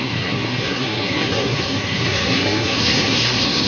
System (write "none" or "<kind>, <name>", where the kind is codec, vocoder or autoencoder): codec, SNAC